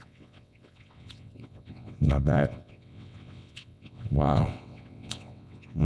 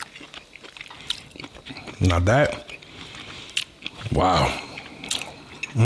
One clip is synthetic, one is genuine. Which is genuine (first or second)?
second